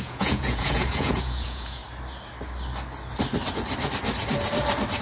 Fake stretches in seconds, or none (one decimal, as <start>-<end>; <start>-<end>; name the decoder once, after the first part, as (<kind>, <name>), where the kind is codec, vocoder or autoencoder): 0.0-1.8 (vocoder, Vocos)